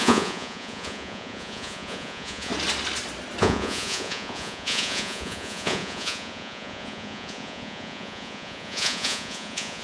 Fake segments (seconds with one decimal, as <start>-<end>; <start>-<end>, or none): 0.0-2.5; 3.4-9.8